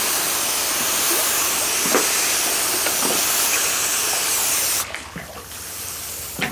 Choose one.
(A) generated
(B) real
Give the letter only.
B